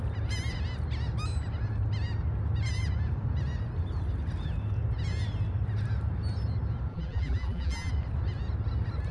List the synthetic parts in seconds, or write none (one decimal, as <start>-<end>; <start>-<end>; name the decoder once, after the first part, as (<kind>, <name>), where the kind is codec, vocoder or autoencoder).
6.9-7.9 (vocoder, BigVGAN v2)